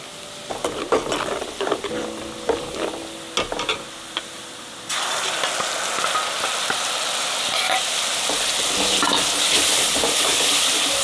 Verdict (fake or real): real